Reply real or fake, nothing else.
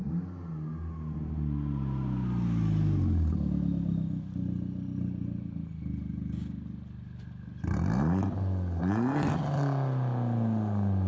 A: real